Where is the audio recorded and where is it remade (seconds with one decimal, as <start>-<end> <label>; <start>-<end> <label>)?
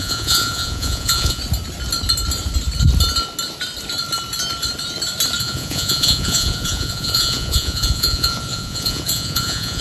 0.0-1.4 remade; 1.4-5.4 recorded; 5.4-9.8 remade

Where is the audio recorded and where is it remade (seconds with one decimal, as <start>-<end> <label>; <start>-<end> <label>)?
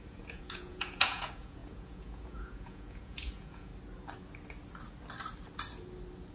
0.0-3.7 remade; 3.7-6.3 recorded